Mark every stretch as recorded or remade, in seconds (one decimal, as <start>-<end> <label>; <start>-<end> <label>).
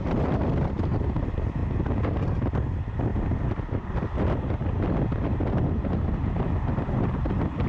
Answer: 0.0-3.1 recorded; 3.1-4.3 remade; 4.3-7.7 recorded